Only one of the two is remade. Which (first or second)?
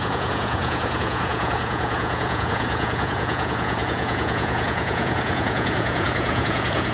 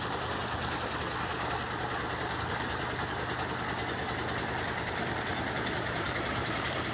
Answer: first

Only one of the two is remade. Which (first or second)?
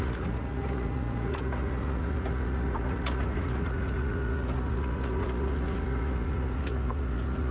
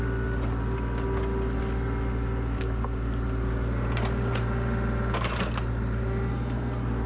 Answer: first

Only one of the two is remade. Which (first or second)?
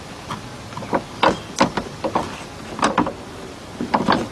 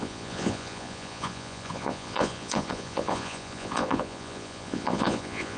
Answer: second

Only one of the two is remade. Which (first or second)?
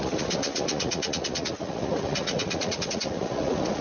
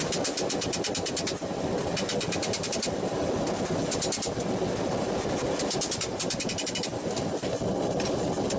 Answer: first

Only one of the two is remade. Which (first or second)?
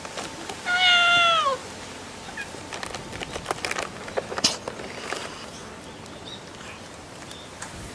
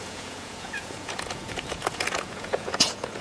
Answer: second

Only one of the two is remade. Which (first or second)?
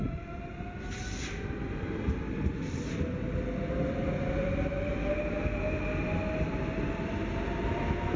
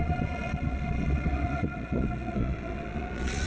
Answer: second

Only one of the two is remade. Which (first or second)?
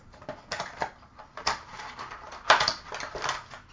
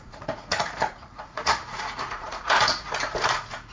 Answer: second